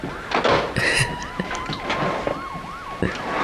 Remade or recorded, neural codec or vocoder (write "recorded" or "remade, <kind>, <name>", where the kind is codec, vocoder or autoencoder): recorded